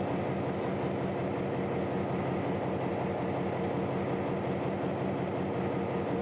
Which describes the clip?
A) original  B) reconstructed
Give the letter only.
A